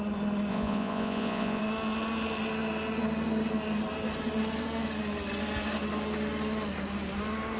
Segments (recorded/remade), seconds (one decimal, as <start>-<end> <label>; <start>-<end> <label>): 0.0-0.5 recorded; 0.5-1.6 remade; 1.6-7.6 recorded